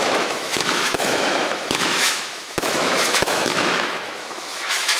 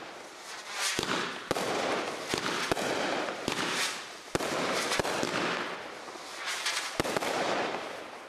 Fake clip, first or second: first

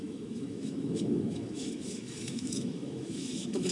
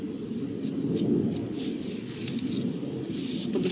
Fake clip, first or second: first